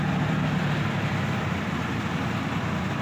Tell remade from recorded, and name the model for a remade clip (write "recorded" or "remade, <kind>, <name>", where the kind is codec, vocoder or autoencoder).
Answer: remade, vocoder, BigVGAN v2